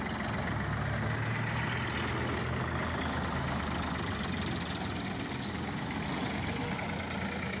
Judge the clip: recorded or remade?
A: recorded